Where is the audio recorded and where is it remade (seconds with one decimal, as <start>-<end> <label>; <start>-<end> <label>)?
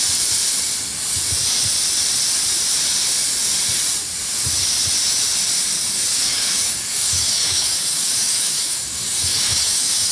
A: 0.0-6.1 recorded; 6.1-10.1 remade